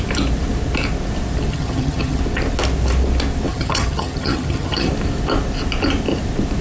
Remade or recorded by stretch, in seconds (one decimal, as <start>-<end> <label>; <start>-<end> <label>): 0.0-1.5 recorded; 1.5-2.2 remade; 2.2-3.5 recorded; 3.5-4.9 remade; 4.9-6.6 recorded